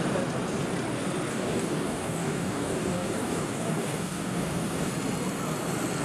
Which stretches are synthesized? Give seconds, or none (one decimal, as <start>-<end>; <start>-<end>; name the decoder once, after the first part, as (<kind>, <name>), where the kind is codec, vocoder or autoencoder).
1.3-4.9 (codec, DAC)